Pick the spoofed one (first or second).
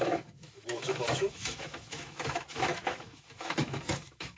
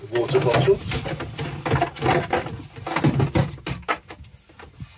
first